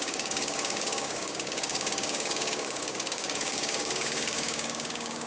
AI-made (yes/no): yes